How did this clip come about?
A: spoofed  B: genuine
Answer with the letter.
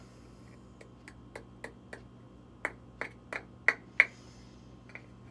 B